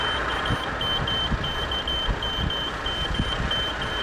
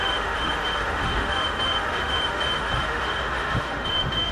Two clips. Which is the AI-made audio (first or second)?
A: second